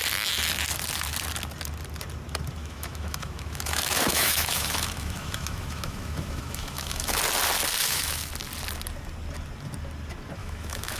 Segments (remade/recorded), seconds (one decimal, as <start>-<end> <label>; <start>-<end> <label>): 0.0-2.6 recorded; 2.6-7.2 remade; 7.2-7.8 recorded; 7.8-8.3 remade; 8.3-10.4 recorded; 10.4-11.0 remade